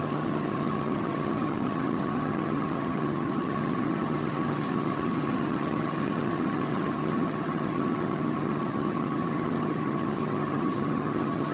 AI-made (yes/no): yes